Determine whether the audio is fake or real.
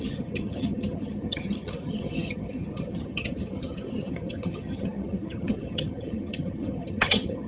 fake